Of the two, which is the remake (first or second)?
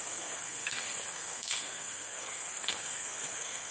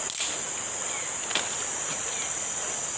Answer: first